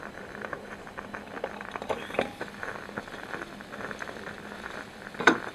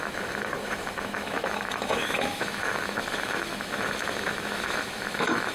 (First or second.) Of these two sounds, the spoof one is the second